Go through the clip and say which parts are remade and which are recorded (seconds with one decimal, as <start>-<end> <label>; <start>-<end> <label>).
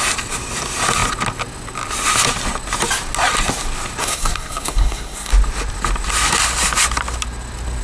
0.0-4.0 recorded; 4.0-5.3 remade; 5.3-7.8 recorded